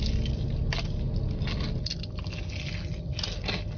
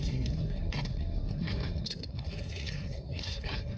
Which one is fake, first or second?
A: second